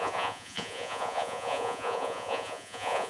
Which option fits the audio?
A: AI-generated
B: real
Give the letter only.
A